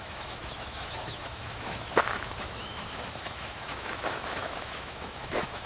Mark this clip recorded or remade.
remade